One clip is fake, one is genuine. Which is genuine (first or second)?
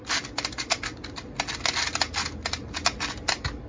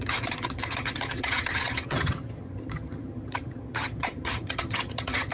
first